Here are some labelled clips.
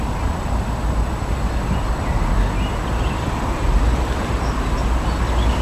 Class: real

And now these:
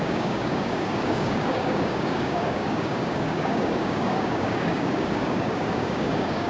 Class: fake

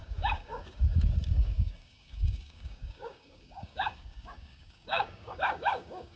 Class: fake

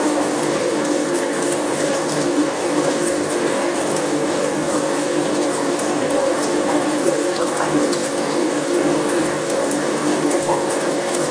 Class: fake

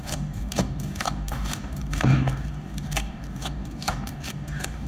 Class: fake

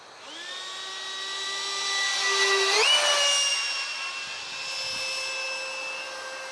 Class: real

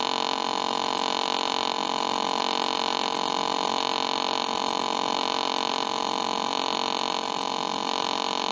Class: real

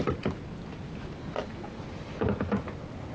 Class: real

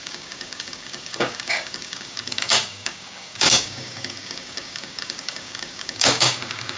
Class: fake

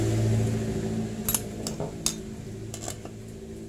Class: real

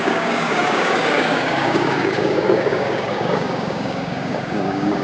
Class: fake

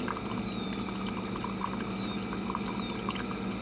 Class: real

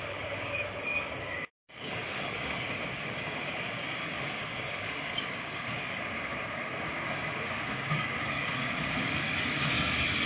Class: fake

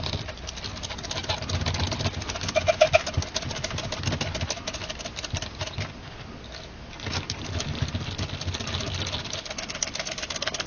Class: real